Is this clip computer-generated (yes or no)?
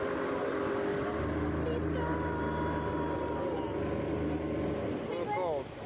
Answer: no